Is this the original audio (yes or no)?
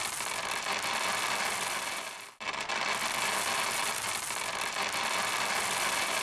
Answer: yes